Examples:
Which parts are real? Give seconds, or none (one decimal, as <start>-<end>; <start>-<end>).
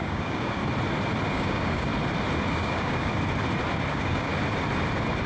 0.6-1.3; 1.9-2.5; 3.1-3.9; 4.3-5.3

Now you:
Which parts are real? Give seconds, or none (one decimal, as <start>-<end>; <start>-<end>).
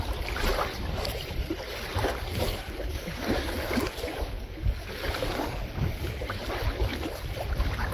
0.0-0.7; 1.2-2.4; 6.4-7.9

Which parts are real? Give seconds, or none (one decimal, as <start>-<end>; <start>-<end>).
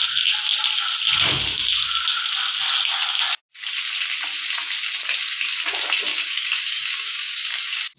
0.0-6.1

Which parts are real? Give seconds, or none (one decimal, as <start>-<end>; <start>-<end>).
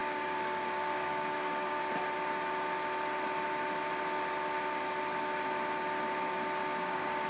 1.8-6.6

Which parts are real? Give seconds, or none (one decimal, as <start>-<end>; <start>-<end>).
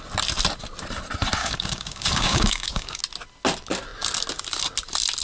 0.0-1.4; 3.0-5.2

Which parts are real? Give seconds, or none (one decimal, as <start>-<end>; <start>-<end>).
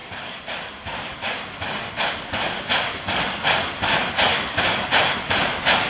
0.0-4.3; 4.9-5.9